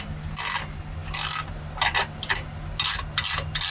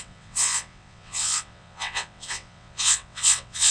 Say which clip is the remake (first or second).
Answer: second